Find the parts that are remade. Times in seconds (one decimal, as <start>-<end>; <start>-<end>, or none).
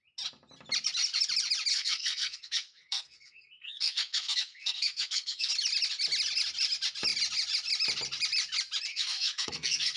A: 1.7-5.5; 8.9-10.0